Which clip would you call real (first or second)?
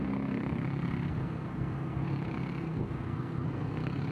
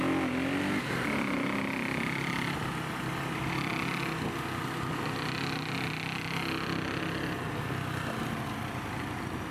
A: second